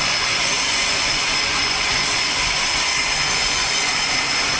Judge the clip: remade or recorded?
remade